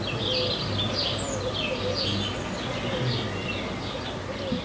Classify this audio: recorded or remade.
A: recorded